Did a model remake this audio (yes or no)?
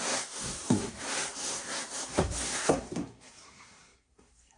yes